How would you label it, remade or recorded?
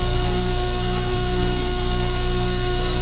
remade